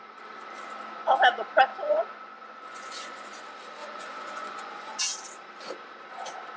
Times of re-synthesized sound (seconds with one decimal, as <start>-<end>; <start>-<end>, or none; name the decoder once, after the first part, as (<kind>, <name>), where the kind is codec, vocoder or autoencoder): 1.7-3.4 (vocoder, Vocos); 3.8-5.0